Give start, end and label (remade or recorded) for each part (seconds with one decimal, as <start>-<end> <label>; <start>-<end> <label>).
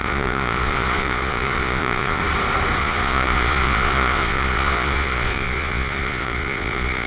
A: 0.0-2.2 remade; 2.2-2.8 recorded; 2.8-7.1 remade